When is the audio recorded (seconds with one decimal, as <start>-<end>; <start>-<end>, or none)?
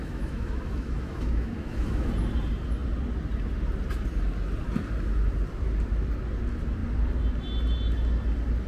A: 2.1-8.7